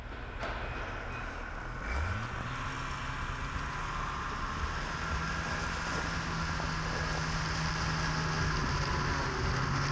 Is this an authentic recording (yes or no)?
yes